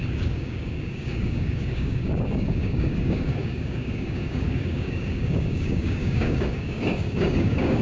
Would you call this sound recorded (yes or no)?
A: no